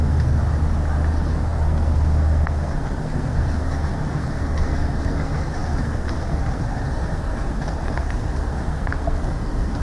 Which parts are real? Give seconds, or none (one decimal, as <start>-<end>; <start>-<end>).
0.4-1.1